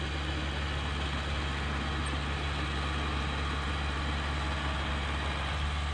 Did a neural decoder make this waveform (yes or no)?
no